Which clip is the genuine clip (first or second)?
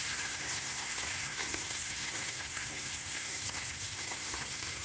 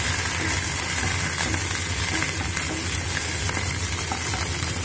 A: second